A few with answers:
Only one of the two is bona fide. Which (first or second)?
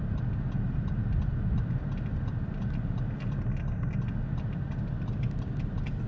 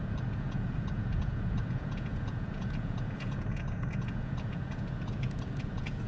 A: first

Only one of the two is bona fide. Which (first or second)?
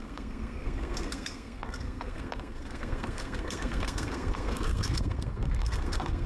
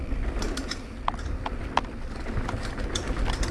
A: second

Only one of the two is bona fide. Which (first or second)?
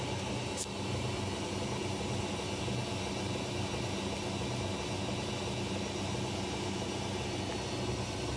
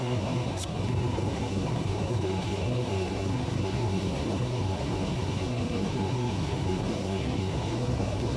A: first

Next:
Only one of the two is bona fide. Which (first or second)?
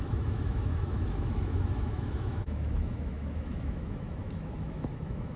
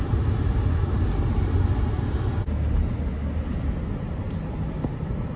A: second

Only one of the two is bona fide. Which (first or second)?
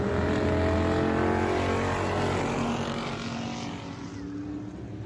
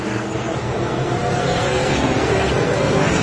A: first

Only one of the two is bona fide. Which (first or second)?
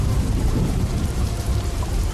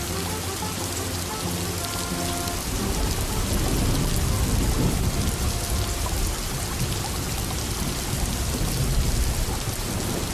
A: second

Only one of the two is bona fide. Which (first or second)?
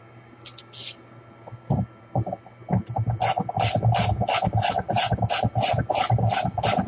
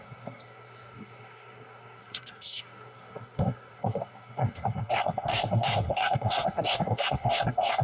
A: first